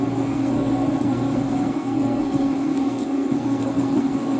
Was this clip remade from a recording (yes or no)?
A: yes